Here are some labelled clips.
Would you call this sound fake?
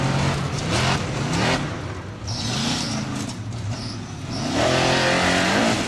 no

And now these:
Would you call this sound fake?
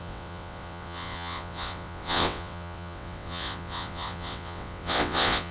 yes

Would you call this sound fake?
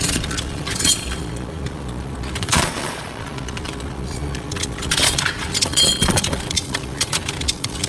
yes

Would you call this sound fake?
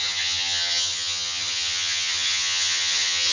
yes